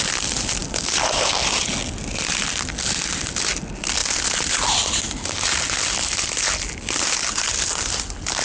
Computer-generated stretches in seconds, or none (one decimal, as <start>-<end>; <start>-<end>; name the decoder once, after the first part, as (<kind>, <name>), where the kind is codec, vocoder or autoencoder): none